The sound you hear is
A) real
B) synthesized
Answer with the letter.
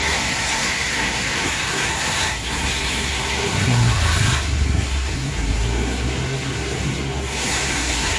B